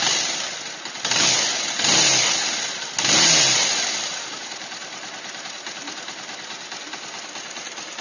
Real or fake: real